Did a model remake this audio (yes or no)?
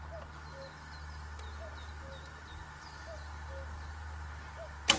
no